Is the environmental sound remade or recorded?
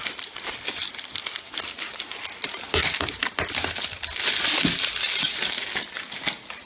recorded